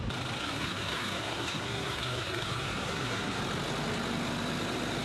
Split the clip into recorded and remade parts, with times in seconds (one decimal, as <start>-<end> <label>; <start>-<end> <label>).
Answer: 0.0-0.4 recorded; 0.4-3.4 remade; 3.4-5.0 recorded